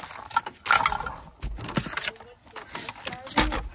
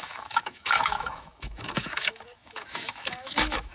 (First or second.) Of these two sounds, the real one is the first